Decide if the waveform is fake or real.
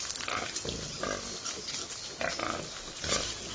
real